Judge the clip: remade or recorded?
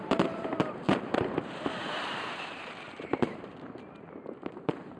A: remade